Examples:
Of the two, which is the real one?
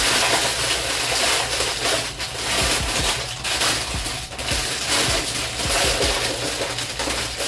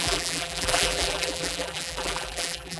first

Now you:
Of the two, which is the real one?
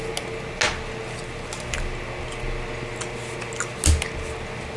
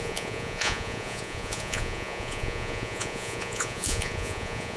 first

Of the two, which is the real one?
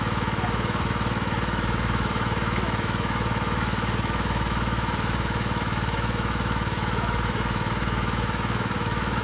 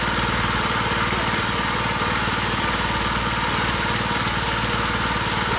second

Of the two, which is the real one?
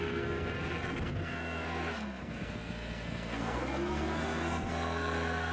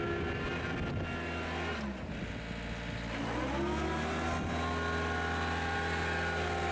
second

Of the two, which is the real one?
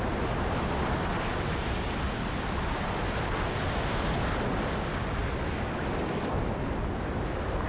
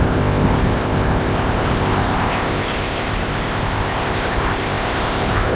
first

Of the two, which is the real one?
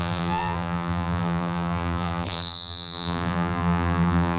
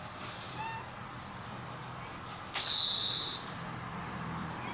second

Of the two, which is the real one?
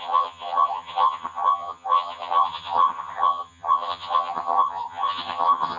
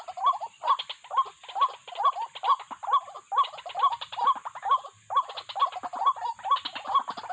second